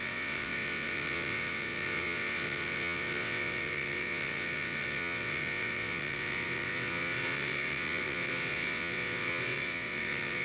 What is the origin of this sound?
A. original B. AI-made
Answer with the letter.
B